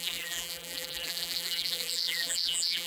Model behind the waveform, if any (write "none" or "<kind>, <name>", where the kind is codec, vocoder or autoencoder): vocoder, BigVGAN v2